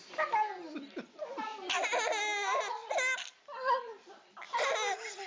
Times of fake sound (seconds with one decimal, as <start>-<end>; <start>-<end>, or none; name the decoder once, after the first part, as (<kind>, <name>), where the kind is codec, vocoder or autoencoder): none

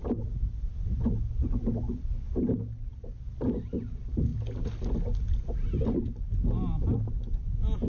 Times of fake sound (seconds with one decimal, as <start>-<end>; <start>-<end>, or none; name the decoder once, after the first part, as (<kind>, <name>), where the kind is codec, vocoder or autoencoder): none

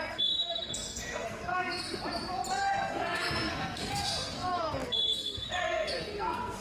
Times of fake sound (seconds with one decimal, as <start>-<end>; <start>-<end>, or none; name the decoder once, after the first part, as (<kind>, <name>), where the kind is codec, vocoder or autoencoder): 0.0-2.0 (codec, SNAC); 2.5-6.6

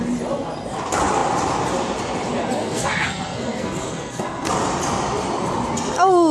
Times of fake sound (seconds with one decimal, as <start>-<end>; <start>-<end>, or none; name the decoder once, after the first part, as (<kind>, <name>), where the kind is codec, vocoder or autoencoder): 2.6-4.5 (codec, SNAC)

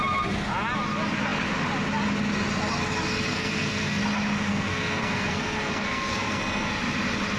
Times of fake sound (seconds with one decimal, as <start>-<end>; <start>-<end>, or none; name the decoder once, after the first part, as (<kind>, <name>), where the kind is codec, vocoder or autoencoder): 3.3-4.0 (codec, SNAC); 4.5-6.7

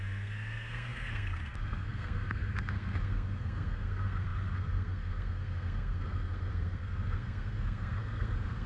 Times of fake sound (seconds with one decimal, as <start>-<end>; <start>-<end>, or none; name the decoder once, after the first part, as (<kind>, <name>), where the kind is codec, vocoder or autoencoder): 0.0-8.7 (codec, SNAC)